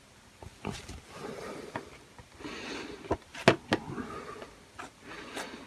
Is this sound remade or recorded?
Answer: recorded